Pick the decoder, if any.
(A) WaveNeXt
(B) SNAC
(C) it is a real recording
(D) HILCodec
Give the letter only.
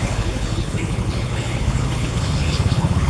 D